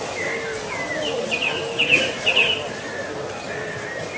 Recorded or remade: recorded